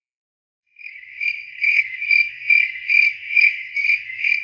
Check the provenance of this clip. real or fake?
fake